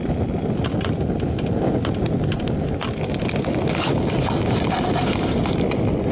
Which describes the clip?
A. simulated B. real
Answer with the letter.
B